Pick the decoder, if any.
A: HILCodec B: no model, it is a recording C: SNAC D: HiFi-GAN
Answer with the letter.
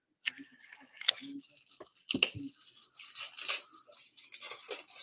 B